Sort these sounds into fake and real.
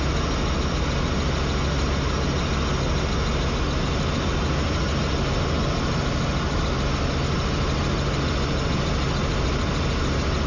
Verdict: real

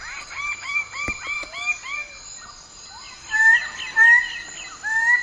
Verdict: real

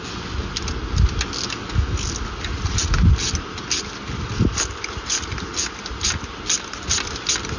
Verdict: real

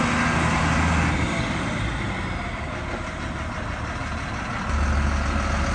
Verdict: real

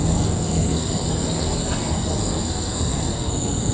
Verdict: fake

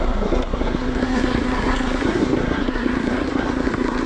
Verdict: fake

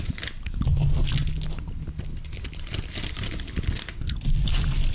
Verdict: real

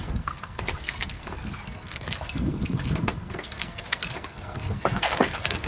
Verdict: fake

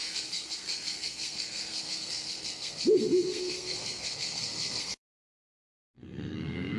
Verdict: fake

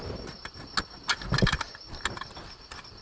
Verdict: real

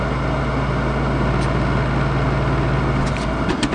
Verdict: real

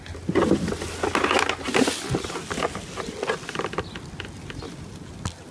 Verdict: real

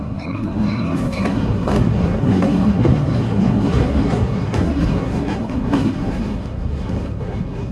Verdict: fake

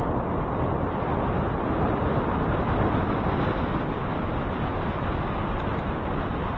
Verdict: real